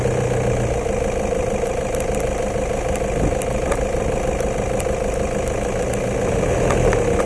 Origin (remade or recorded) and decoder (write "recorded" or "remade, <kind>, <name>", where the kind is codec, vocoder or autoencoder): recorded